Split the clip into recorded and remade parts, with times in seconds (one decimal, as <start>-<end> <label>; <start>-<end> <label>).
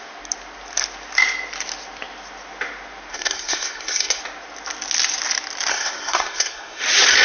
0.0-3.1 recorded; 3.1-4.2 remade; 4.2-5.7 recorded; 5.7-6.8 remade; 6.8-7.2 recorded